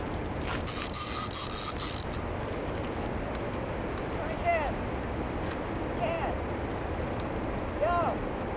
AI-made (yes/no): no